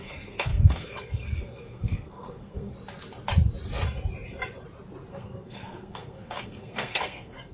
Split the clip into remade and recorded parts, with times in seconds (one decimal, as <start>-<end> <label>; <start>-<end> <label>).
0.0-2.7 remade; 2.7-5.1 recorded; 5.1-7.5 remade